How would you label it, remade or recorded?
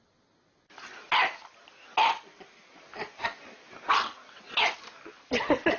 recorded